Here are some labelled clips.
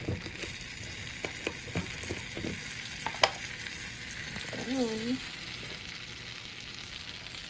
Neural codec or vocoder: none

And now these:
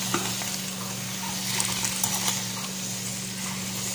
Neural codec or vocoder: none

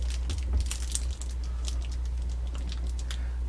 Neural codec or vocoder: none